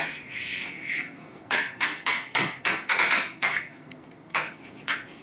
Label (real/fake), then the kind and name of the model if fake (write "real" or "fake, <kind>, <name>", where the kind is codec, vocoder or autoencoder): fake, codec, SNAC